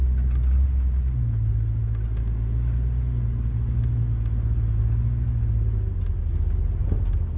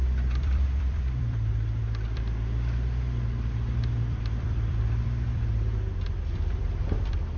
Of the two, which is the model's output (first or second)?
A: second